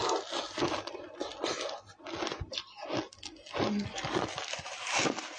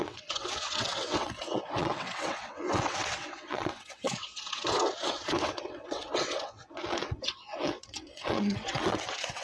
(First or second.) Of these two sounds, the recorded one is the first